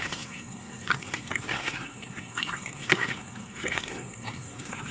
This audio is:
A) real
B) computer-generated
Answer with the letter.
B